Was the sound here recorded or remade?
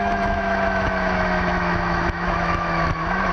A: remade